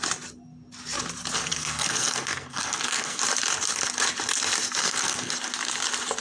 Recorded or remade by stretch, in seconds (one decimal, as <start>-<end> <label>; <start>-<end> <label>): 0.0-1.4 recorded; 1.4-3.2 remade; 3.2-4.8 recorded; 4.8-5.3 remade; 5.3-6.2 recorded